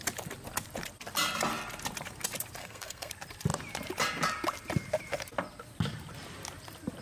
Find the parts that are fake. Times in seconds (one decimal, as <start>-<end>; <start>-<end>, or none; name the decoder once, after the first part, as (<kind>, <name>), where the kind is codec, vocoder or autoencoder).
2.6-3.1 (codec, SNAC)